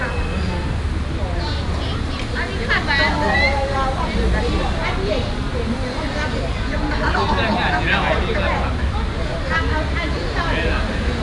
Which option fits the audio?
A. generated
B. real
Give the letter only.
B